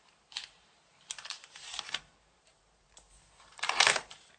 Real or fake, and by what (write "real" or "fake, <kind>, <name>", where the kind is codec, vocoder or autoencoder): fake, vocoder, BigVGAN v2